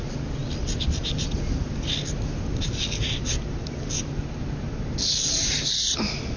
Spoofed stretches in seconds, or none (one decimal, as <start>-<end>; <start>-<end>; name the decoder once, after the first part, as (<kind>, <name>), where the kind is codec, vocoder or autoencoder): none